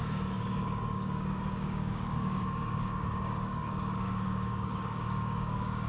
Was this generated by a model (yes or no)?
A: yes